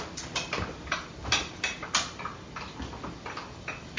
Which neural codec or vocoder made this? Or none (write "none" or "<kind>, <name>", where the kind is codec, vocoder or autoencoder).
none